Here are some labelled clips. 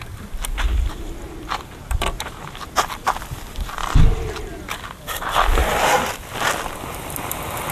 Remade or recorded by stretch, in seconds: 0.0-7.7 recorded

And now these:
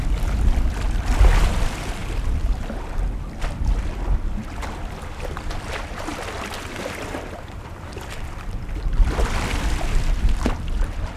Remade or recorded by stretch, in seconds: 0.0-11.2 recorded

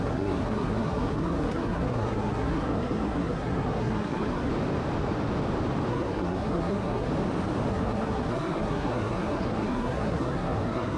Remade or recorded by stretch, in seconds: 0.0-4.5 remade; 4.5-5.9 recorded; 5.9-7.1 remade; 7.1-7.7 recorded; 7.7-11.0 remade

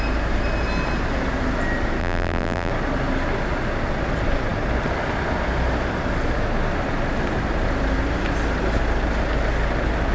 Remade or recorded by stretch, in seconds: 0.0-2.0 recorded; 2.0-2.7 remade; 2.7-10.1 recorded

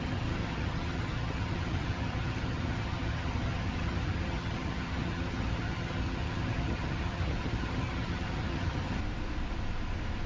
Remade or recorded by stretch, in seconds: 0.0-9.0 remade; 9.0-10.3 recorded

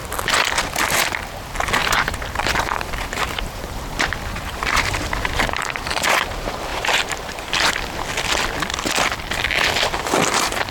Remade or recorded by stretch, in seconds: 0.0-1.8 recorded; 1.8-6.0 remade; 6.0-6.7 recorded; 6.7-7.7 remade; 7.7-10.7 recorded

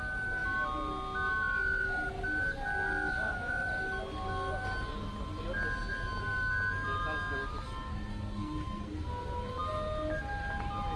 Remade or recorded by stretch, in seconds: 0.0-7.9 recorded; 7.9-9.1 remade; 9.1-11.0 recorded

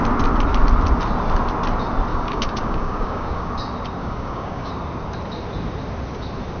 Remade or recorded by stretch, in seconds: 0.0-2.1 recorded; 2.1-3.5 remade; 3.5-4.0 recorded; 4.0-4.7 remade; 4.7-6.6 recorded